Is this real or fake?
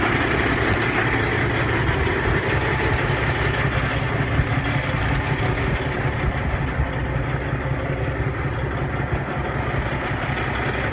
real